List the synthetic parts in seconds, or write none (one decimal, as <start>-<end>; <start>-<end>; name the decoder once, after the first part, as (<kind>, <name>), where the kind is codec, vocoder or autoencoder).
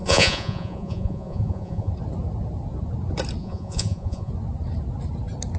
0.0-1.9 (vocoder, Vocos); 3.4-4.3